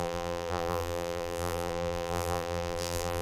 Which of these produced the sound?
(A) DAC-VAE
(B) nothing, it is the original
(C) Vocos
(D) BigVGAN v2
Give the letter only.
D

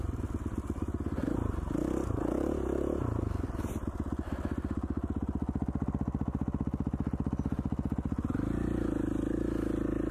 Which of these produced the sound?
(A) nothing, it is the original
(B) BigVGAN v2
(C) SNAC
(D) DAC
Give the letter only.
A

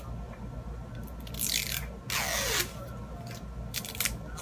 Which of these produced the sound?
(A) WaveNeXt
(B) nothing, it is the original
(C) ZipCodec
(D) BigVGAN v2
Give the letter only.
B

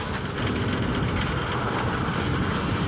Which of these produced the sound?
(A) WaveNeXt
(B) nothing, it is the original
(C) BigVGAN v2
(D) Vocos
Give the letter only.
B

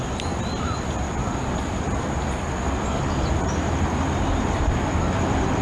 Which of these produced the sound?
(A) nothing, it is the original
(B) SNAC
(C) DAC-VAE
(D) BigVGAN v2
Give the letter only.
A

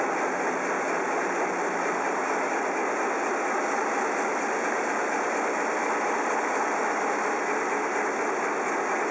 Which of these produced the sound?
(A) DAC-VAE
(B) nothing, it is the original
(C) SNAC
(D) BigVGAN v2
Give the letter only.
D